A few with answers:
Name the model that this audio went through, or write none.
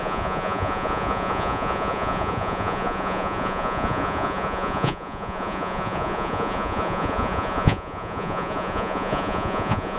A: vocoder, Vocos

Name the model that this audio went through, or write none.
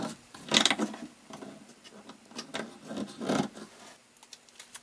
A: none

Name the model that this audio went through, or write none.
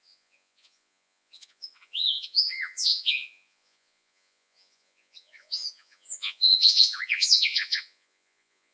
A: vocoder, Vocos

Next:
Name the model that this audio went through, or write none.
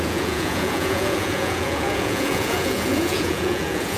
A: vocoder, Vocos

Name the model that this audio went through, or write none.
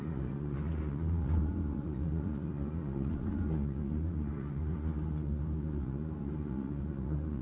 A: vocoder, Vocos